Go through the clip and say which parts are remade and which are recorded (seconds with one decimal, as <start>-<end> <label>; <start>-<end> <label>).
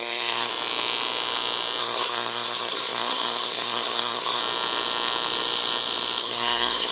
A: 0.0-0.5 remade; 0.5-1.8 recorded; 1.8-4.4 remade; 4.4-6.2 recorded; 6.2-6.9 remade